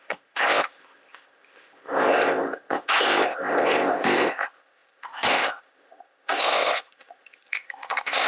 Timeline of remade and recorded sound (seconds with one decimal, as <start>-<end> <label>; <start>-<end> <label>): 0.0-8.3 remade